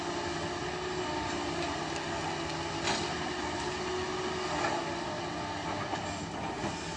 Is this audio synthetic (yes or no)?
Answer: no